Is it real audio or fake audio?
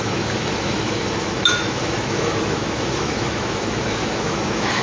fake